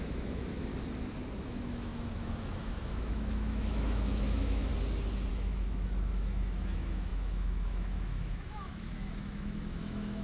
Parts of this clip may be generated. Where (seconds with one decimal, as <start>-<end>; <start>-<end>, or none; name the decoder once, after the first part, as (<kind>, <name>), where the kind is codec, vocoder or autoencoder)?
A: 0.0-0.7 (autoencoder, DAC-VAE); 1.4-4.7; 5.3-10.2